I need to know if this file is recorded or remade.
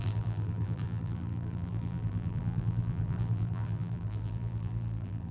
remade